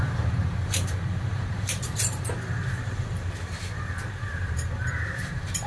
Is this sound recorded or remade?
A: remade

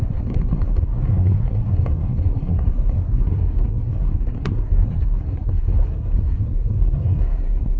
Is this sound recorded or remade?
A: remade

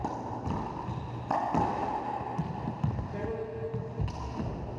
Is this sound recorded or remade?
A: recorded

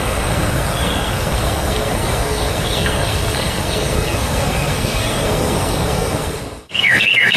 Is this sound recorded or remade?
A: remade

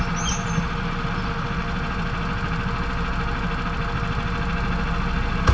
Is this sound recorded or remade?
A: recorded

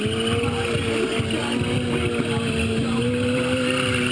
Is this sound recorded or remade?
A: recorded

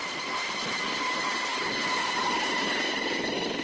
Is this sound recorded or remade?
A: recorded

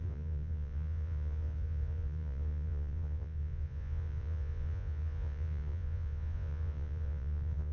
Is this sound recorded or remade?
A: remade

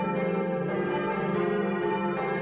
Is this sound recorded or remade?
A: remade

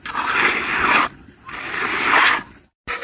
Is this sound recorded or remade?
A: recorded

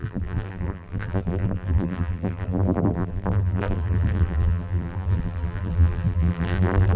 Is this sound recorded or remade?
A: remade